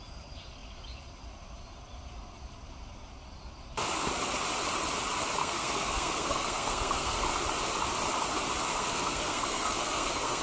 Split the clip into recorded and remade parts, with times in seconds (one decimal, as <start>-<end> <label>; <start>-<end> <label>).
0.0-5.4 recorded; 5.4-7.2 remade; 7.2-8.7 recorded; 8.7-10.4 remade